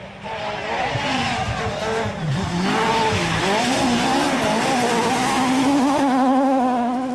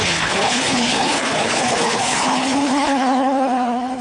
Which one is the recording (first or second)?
first